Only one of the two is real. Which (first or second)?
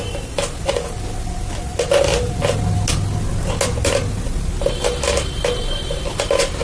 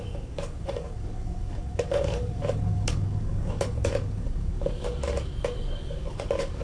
first